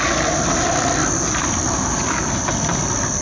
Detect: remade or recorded recorded